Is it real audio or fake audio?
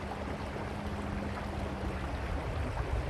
real